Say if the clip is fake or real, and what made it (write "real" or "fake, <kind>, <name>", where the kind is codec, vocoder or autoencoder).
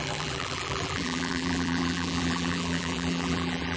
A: fake, vocoder, BigVGAN v2